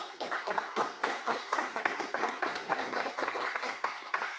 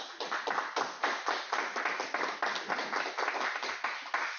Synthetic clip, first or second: first